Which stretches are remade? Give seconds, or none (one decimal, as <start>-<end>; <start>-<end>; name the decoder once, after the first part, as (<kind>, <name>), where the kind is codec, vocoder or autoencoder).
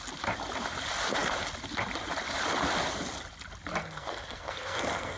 3.8-5.2 (codec, SNAC)